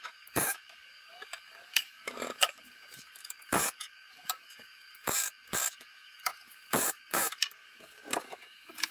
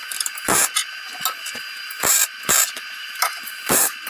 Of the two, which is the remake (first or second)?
first